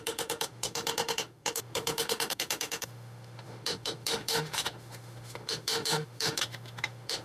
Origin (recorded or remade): remade